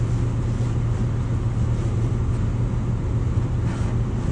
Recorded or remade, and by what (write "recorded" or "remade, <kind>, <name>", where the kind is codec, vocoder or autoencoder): recorded